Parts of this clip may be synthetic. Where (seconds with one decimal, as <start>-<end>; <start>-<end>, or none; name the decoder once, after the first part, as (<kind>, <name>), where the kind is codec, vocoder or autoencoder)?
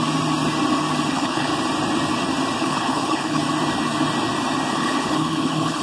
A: 1.1-1.5 (codec, HILCodec); 2.6-3.4; 4.7-5.8